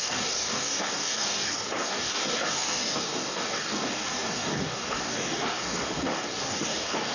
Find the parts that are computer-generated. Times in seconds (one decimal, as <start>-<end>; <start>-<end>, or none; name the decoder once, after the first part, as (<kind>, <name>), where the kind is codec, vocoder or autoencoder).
0.0-7.1 (codec, DAC)